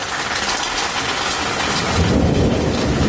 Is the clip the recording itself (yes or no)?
yes